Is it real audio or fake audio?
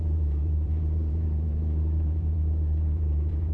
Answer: fake